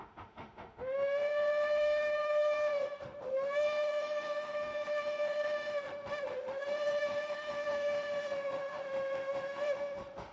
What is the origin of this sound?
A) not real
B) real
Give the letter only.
A